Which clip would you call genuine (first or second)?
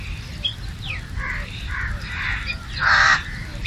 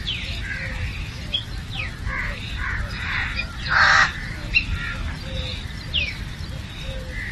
first